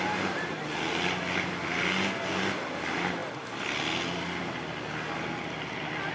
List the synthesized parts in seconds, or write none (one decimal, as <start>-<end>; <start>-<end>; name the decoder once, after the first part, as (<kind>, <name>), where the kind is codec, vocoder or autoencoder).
none